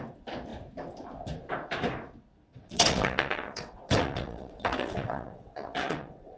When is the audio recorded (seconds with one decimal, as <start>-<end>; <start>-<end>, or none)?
0.0-2.5